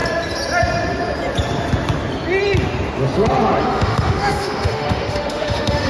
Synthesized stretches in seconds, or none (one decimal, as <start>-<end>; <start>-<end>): 3.6-5.9